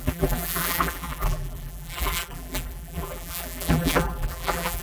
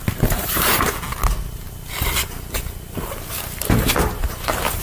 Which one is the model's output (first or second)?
first